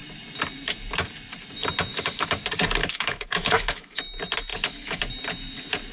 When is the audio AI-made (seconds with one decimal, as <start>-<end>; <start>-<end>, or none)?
1.9-2.4; 2.8-4.0; 4.5-5.0